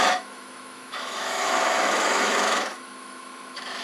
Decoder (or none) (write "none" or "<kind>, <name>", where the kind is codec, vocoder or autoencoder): autoencoder, DAC-VAE